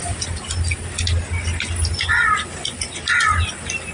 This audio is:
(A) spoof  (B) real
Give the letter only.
B